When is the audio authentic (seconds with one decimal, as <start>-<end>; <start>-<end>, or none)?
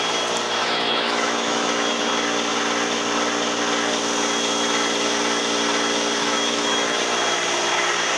0.0-0.6; 2.1-6.2; 7.0-8.2